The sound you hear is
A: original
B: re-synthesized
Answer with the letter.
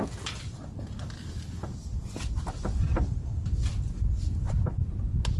A